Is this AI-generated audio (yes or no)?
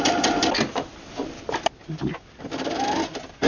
no